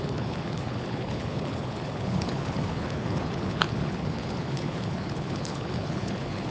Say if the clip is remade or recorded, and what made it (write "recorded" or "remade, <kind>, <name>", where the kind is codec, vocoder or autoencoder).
remade, codec, HILCodec